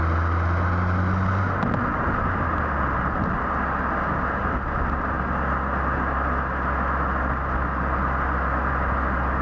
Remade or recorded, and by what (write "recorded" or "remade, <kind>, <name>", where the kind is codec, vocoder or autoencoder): recorded